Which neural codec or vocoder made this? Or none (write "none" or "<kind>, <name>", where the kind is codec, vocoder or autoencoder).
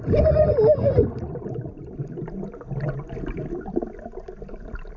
none